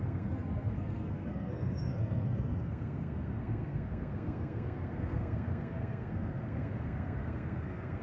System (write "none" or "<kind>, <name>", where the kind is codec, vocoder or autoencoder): codec, SNAC